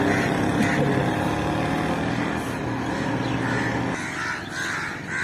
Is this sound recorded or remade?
recorded